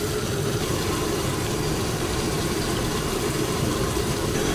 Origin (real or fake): fake